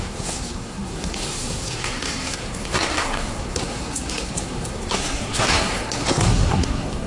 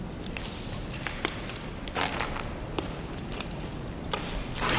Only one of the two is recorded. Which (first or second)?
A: second